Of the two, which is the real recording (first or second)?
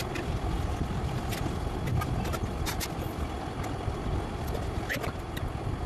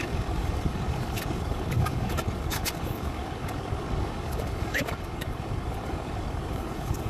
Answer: first